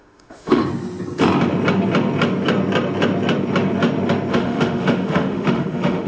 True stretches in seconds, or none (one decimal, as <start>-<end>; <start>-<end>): 0.6-4.3